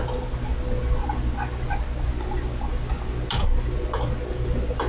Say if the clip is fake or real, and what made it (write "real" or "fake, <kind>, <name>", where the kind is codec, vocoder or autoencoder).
real